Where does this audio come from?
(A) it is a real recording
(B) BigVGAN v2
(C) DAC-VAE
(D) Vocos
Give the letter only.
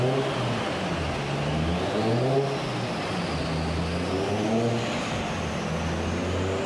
A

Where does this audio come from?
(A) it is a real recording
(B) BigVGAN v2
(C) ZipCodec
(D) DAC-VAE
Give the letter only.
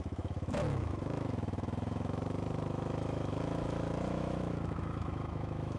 D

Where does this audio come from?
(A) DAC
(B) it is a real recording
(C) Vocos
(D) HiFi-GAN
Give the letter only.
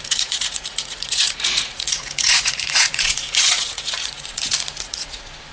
C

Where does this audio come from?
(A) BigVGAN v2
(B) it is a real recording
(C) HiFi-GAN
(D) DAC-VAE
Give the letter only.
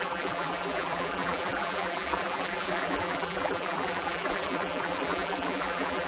A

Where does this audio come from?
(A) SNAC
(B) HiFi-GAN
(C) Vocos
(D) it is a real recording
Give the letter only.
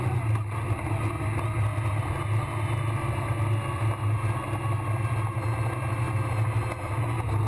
D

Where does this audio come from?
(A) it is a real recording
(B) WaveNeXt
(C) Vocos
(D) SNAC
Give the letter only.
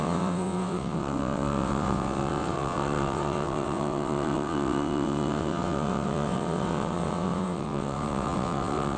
B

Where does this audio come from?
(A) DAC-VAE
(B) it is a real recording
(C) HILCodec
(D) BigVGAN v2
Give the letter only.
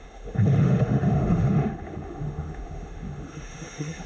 A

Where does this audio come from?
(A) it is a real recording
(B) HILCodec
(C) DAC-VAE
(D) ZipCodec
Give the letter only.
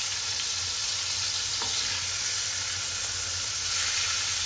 A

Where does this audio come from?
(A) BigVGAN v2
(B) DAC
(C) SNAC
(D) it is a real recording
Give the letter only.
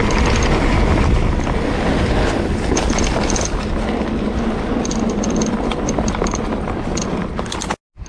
D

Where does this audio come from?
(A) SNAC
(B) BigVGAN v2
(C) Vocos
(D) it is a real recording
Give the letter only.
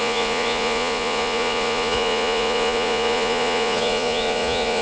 C